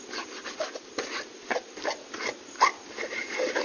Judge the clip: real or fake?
real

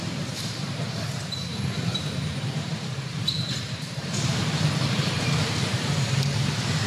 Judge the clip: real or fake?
fake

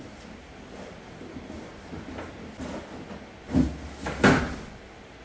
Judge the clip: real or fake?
real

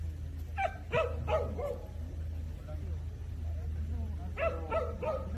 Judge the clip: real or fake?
real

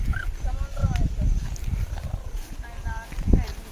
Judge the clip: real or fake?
real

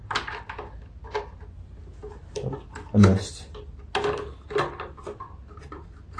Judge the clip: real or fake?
real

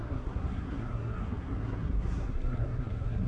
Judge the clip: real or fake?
fake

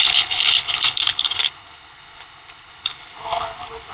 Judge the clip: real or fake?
fake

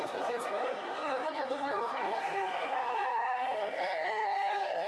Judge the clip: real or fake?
fake